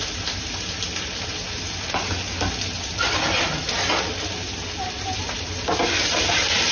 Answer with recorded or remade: recorded